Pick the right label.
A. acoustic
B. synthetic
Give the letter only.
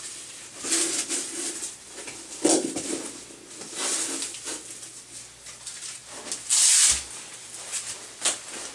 A